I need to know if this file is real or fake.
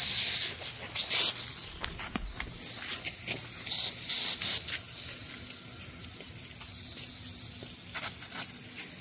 real